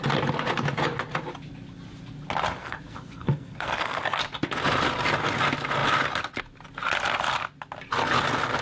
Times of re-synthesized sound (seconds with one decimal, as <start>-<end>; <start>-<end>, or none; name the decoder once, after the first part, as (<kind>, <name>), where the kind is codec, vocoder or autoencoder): 2.6-4.2 (codec, SNAC)